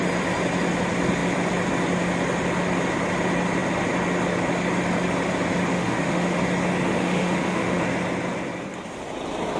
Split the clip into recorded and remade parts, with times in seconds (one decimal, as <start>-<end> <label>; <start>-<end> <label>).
0.0-5.7 recorded; 5.7-6.4 remade; 6.4-6.9 recorded; 6.9-7.8 remade; 7.8-9.6 recorded